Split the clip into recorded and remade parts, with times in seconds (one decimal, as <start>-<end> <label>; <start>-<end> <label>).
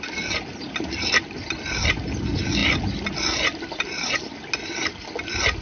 0.0-5.6 recorded